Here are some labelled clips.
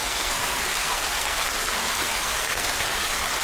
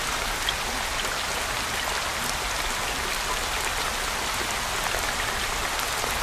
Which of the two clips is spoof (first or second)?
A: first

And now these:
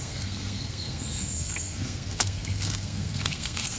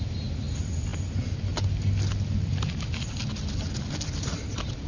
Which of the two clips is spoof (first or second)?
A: first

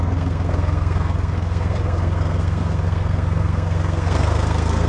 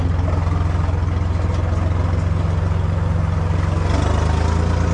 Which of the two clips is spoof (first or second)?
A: first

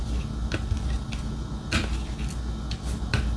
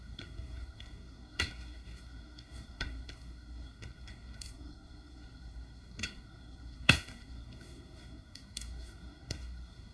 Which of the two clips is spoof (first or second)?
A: second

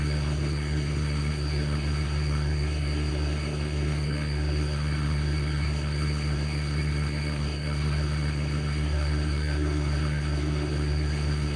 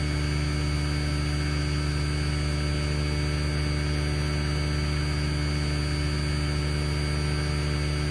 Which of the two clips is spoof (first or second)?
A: first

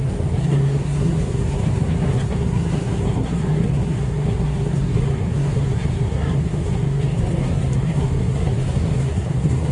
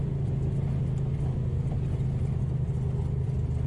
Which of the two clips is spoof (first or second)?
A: first